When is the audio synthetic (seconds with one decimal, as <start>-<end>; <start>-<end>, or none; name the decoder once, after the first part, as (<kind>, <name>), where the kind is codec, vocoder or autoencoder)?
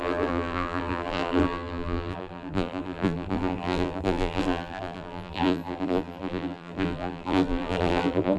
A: 0.0-8.4 (vocoder, BigVGAN v2)